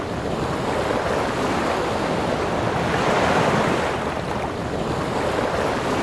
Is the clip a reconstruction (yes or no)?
no